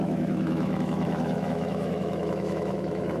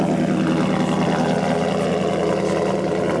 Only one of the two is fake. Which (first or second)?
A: first